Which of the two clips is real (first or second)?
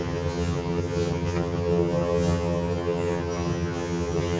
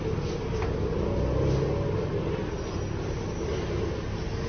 second